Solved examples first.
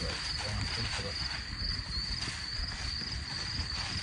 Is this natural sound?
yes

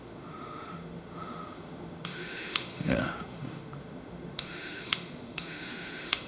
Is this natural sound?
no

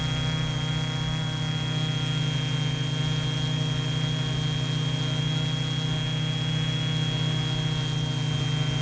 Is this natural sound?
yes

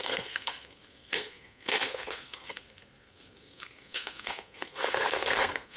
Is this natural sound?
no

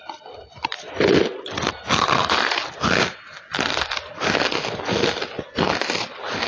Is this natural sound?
yes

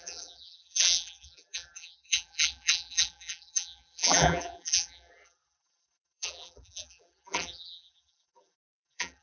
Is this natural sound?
no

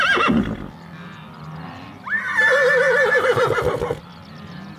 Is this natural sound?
yes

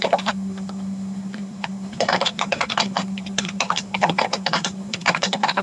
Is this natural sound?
no